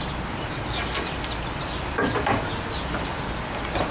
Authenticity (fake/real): fake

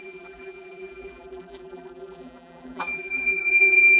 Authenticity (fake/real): fake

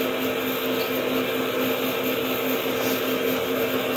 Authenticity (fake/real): real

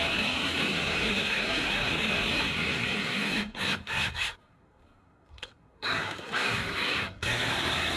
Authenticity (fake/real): fake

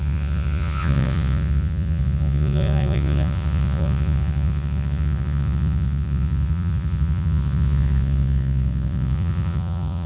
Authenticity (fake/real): fake